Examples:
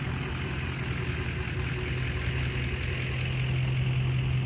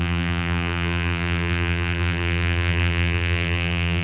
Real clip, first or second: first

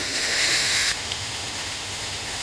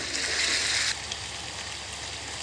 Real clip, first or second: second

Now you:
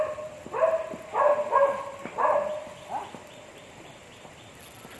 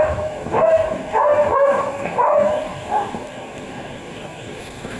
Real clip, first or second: first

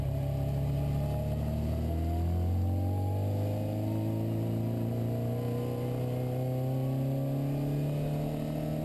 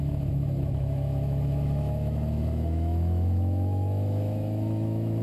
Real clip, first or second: first